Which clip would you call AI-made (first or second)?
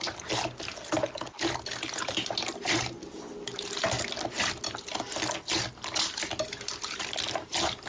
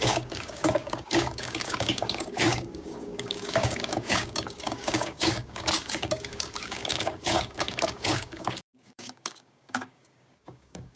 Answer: second